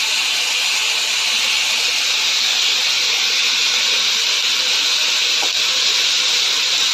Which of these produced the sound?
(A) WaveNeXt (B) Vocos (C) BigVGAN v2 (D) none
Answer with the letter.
D